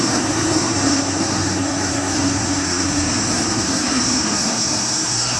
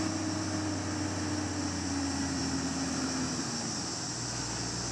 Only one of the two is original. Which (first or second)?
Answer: second